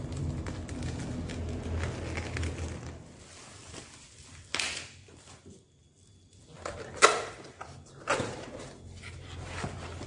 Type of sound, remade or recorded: recorded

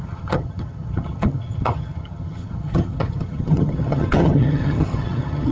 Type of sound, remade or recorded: remade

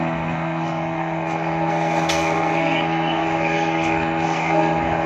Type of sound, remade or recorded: remade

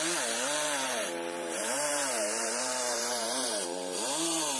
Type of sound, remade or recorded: remade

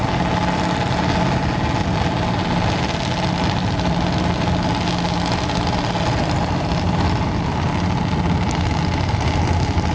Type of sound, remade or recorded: recorded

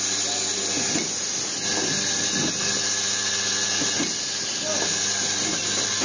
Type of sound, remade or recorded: recorded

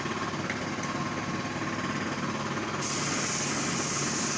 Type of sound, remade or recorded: recorded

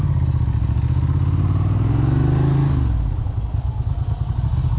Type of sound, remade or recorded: recorded